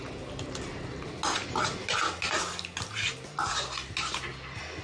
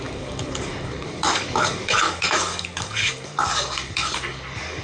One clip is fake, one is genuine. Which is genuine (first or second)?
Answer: first